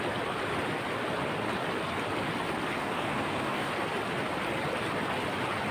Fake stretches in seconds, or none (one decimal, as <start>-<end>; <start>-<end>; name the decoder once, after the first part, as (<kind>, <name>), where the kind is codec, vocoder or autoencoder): 2.8-3.7 (codec, DAC)